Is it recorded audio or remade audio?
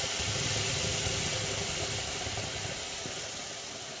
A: recorded